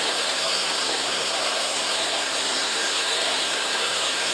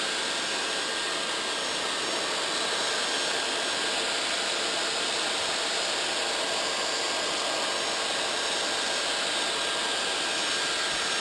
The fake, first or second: first